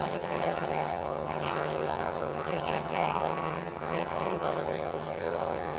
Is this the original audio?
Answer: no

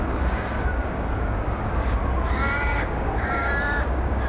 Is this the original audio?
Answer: no